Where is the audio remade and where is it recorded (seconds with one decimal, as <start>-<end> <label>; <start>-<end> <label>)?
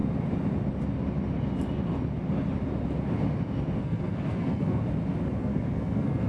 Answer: 0.0-3.8 recorded; 3.8-4.8 remade; 4.8-5.4 recorded; 5.4-6.3 remade